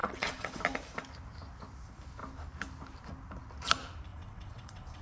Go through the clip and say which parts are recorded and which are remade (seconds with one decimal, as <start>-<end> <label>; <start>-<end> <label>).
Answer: 0.0-0.6 remade; 0.6-4.1 recorded; 4.1-5.0 remade